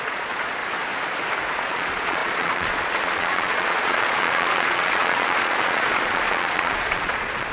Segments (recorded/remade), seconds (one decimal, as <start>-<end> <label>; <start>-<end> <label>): 0.0-0.6 remade; 0.6-1.5 recorded; 1.5-7.5 remade